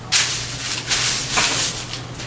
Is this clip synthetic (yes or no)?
no